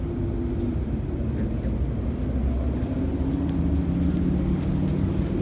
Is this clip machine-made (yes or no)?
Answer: no